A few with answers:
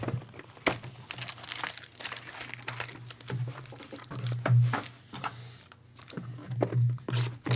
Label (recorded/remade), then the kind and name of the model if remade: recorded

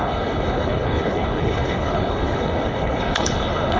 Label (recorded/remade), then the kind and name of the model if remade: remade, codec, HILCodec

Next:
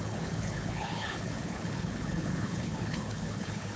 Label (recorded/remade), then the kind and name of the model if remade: remade, codec, HILCodec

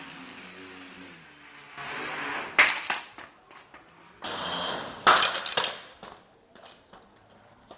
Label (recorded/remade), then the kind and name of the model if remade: recorded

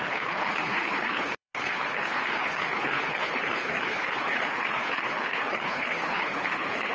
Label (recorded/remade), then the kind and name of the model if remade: remade, codec, HILCodec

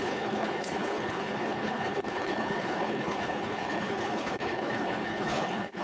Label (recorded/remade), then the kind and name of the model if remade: remade, codec, HILCodec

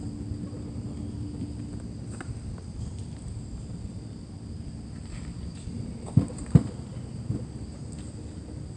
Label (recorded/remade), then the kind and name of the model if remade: recorded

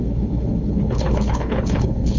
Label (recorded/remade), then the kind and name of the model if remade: remade, codec, HILCodec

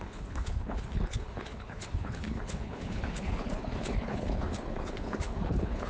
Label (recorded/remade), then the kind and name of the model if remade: remade, codec, HILCodec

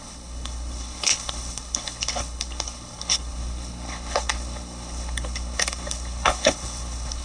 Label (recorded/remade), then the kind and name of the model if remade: remade, codec, HILCodec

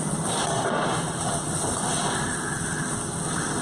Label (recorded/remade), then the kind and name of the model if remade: recorded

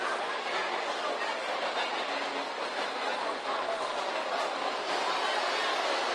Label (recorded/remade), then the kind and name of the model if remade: recorded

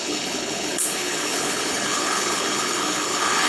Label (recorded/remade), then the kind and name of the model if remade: remade, codec, HILCodec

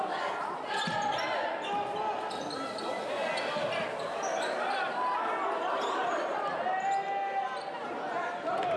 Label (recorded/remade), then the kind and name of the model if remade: recorded